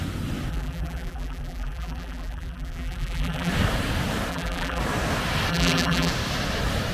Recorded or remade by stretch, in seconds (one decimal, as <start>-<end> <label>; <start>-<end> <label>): 0.0-0.5 recorded; 0.5-3.5 remade; 3.5-4.3 recorded; 4.3-4.8 remade; 4.8-5.5 recorded; 5.5-6.1 remade; 6.1-6.9 recorded